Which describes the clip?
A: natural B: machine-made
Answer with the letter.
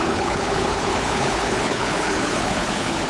B